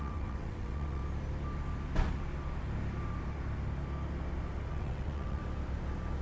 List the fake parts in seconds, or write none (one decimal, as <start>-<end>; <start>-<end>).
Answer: 0.0-1.0; 4.7-5.4